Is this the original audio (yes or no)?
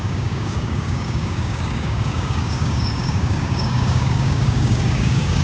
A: no